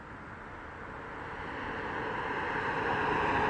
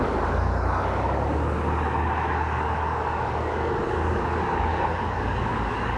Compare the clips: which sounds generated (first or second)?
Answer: second